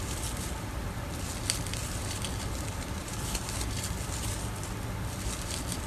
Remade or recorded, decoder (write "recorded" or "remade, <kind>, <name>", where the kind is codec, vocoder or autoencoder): recorded